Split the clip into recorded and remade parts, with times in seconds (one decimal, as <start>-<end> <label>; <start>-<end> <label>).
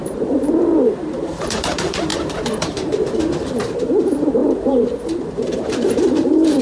0.0-6.6 remade